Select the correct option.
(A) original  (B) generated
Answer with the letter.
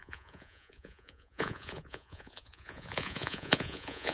B